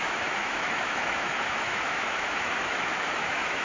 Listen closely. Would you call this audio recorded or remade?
remade